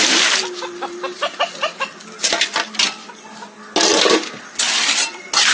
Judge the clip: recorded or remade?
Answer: recorded